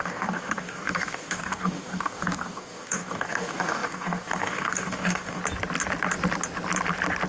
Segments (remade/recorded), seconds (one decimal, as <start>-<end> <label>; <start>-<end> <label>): 0.0-5.4 remade; 5.4-7.3 recorded